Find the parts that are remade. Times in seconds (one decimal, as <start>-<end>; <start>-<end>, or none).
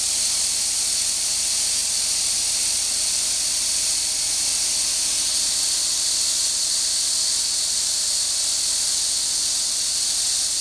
none